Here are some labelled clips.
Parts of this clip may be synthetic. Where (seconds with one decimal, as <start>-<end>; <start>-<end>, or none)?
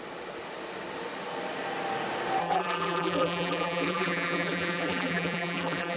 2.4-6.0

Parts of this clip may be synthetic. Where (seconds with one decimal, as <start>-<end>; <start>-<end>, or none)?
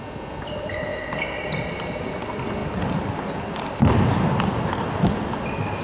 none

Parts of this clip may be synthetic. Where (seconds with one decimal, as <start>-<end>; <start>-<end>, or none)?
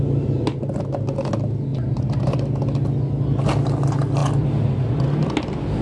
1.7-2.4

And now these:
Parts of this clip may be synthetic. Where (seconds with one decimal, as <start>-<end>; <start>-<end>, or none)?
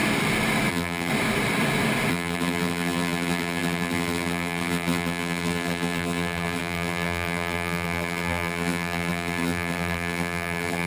0.7-1.1; 2.1-10.9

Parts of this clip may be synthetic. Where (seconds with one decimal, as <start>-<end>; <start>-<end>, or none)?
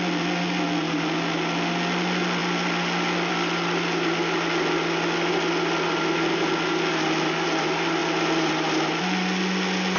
none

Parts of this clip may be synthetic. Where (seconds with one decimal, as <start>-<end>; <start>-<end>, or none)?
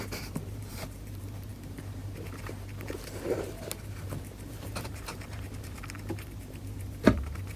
0.0-7.6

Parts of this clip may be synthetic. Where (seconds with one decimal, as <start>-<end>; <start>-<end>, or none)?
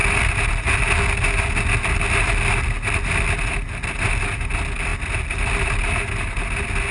none